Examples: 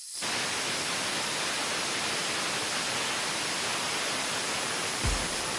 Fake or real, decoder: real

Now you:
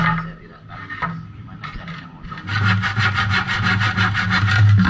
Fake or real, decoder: real